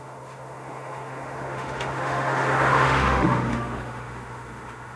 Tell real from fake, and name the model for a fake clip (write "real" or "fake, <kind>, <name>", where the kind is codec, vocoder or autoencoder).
fake, autoencoder, DAC-VAE